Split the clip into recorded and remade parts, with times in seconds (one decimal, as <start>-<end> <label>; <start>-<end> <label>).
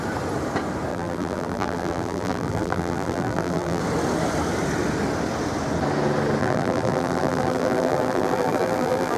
0.0-0.9 recorded; 0.9-3.8 remade; 3.8-6.4 recorded; 6.4-9.2 remade